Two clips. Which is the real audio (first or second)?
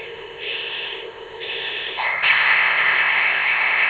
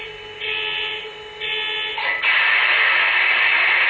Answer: second